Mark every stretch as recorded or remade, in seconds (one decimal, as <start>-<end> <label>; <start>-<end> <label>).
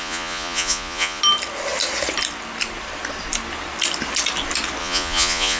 0.0-1.2 remade; 1.2-4.8 recorded; 4.8-5.6 remade